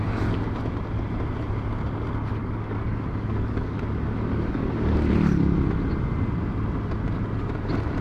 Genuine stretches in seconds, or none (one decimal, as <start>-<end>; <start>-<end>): 0.0-2.4; 3.8-4.3; 5.1-8.0